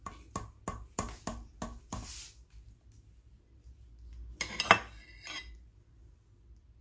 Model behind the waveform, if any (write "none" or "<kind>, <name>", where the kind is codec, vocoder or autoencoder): none